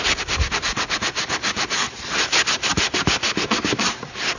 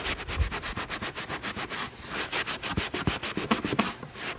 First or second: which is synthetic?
first